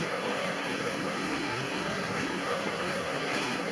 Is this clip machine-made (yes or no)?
yes